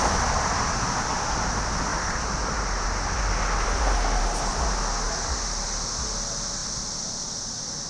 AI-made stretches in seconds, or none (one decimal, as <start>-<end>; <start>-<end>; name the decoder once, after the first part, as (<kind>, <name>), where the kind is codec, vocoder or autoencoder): none